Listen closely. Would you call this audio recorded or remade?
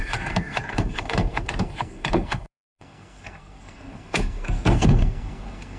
remade